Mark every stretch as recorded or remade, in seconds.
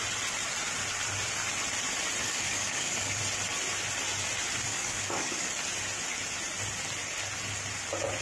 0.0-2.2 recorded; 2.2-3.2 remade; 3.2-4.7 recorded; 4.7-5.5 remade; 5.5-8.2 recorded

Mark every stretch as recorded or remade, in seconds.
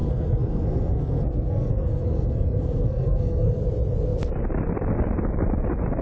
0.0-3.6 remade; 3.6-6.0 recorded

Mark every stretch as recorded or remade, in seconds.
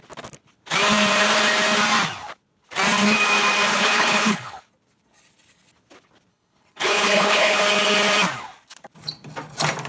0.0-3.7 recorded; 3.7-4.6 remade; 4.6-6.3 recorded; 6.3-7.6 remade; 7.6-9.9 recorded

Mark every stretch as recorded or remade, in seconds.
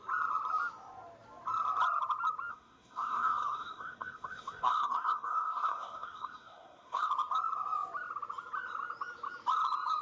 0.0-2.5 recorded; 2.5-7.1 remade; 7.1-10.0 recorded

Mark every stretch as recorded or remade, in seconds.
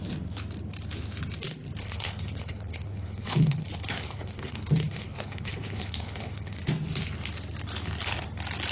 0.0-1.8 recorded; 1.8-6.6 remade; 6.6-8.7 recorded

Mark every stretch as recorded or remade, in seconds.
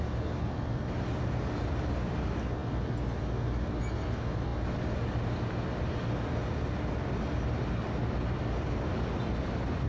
0.0-9.9 recorded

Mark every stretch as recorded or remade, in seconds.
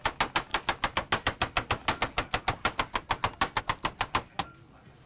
0.0-5.1 recorded